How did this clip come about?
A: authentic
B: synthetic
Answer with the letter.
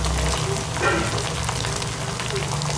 A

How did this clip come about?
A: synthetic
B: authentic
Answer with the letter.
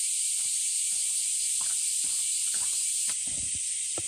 A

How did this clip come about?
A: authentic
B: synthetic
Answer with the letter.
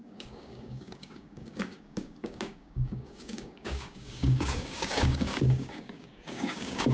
B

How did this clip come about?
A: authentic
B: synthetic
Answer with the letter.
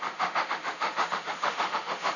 B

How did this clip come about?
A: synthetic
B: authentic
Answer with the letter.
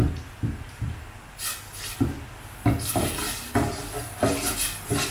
B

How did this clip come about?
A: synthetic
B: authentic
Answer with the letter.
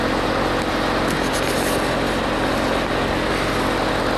B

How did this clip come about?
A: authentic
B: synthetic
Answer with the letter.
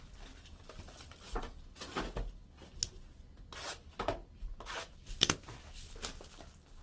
A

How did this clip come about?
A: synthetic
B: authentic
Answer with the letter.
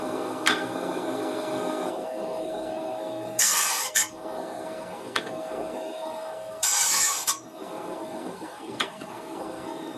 A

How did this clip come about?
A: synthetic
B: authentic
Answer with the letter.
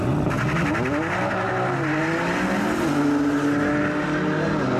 B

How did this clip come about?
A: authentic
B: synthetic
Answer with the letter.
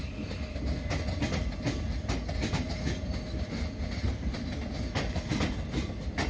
A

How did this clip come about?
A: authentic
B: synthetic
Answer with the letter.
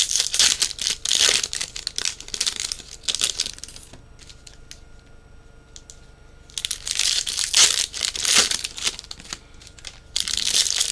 A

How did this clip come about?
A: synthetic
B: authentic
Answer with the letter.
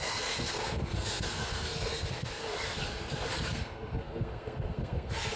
A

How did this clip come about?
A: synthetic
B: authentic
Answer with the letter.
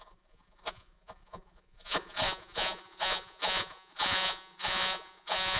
A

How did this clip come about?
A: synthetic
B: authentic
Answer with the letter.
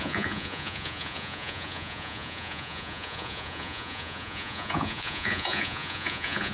A